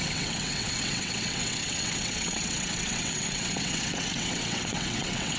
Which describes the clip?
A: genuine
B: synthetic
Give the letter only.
B